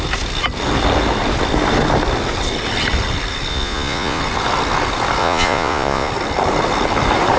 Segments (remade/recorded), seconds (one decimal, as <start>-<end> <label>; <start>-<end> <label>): 0.0-3.5 recorded; 3.5-4.2 remade; 4.2-5.2 recorded; 5.2-6.1 remade; 6.1-7.4 recorded